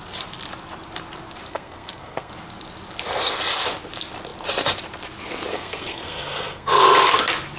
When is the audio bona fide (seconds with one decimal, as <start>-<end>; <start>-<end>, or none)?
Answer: 0.0-1.5; 2.3-5.5; 6.8-7.6